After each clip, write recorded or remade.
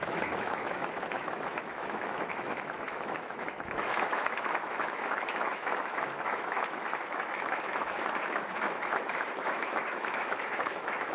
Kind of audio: remade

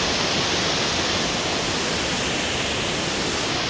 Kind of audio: recorded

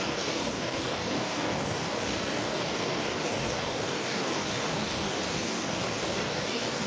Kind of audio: remade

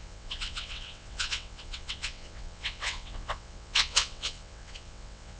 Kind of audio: remade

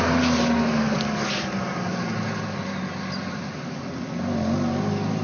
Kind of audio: recorded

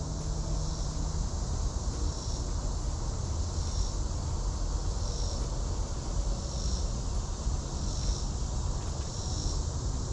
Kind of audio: recorded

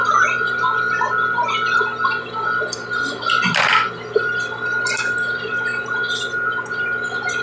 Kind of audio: recorded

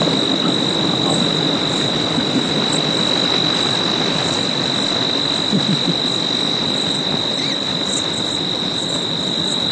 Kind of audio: recorded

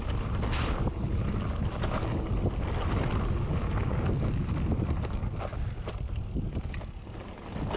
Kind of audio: recorded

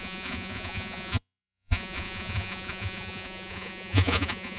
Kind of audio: remade